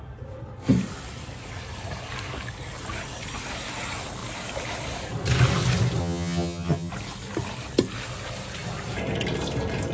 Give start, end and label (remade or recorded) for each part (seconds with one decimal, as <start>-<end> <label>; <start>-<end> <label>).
0.0-6.0 recorded; 6.0-6.9 remade; 6.9-9.9 recorded